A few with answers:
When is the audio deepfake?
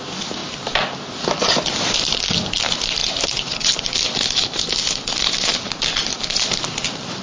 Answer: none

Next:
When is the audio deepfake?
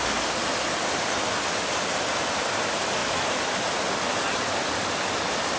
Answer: 3.0-3.8 (vocoder, BigVGAN v2)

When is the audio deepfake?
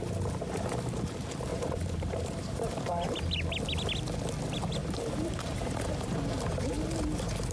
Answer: 1.5-3.1 (vocoder, BigVGAN v2); 4.8-6.7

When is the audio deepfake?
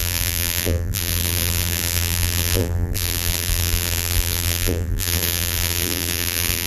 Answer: 0.0-6.7 (vocoder, BigVGAN v2)